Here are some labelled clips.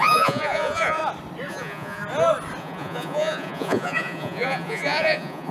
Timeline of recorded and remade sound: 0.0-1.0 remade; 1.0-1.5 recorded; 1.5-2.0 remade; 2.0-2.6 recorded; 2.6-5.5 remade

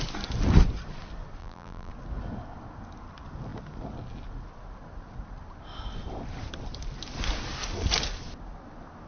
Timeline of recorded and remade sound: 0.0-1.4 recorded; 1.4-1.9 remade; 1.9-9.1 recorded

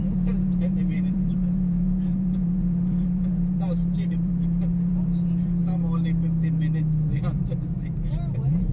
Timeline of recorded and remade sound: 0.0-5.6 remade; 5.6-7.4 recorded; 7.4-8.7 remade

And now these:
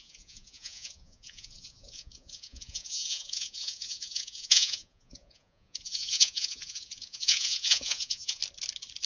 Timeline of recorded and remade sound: 0.0-8.4 remade; 8.4-9.1 recorded

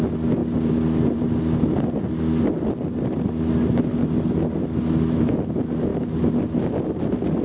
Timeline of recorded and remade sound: 0.0-7.4 recorded

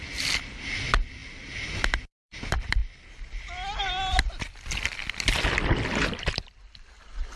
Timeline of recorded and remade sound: 0.0-1.2 remade; 1.2-2.0 recorded; 2.0-2.8 remade; 2.8-4.2 recorded; 4.2-5.0 remade; 5.0-6.0 recorded; 6.0-7.4 remade